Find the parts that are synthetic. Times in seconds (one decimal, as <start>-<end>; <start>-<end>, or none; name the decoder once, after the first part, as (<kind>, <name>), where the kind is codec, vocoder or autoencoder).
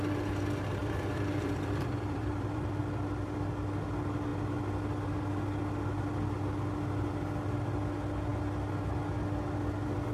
0.8-2.8 (vocoder, BigVGAN v2)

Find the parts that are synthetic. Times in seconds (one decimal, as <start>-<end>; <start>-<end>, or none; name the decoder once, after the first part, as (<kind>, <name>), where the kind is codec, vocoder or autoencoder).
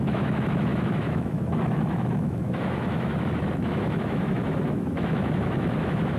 0.0-6.2 (autoencoder, DAC-VAE)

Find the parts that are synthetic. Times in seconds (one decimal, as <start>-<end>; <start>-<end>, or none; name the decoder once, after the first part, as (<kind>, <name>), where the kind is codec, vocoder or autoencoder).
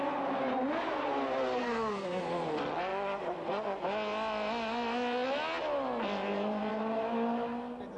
1.6-2.2 (codec, SNAC)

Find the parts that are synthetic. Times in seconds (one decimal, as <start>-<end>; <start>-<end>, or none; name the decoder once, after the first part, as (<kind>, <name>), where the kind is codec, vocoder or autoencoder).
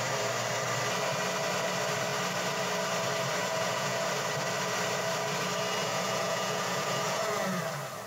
3.4-4.1 (vocoder, Vocos); 5.8-7.6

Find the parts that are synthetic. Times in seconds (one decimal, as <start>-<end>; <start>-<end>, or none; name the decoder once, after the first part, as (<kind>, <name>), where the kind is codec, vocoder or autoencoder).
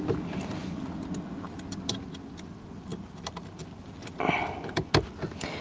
none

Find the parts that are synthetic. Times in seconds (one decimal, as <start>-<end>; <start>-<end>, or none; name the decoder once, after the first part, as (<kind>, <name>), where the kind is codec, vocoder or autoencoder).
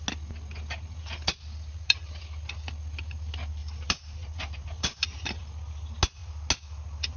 1.7-2.2 (vocoder, BigVGAN v2); 3.6-5.4